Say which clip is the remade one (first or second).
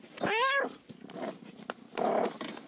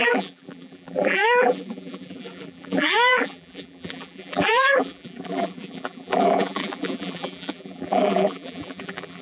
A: second